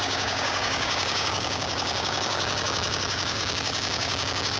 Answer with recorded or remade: remade